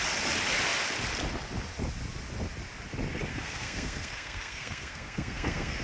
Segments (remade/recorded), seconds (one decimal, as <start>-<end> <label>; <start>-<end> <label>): 0.0-3.3 recorded; 3.3-5.8 remade